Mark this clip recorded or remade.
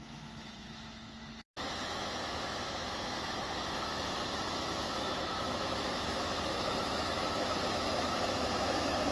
remade